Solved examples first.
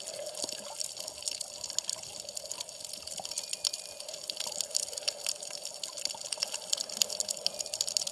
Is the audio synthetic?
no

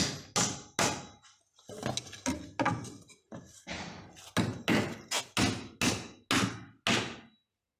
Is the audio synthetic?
no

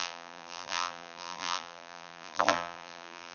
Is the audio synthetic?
yes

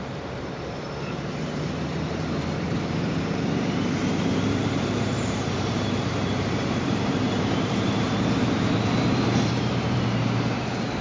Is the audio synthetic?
yes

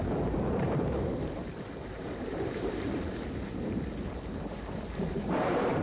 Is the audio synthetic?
yes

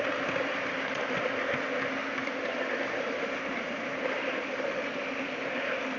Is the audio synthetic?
no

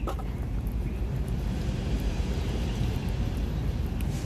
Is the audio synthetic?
yes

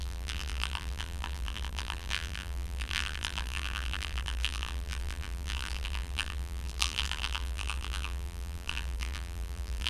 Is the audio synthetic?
yes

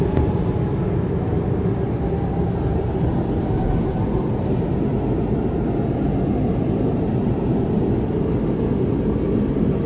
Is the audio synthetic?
yes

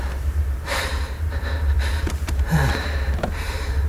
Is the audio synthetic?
yes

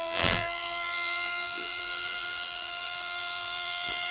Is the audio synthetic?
yes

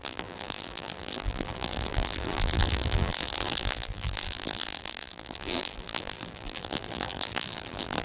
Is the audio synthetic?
yes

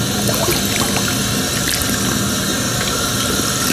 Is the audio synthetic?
no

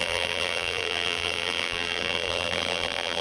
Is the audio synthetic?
yes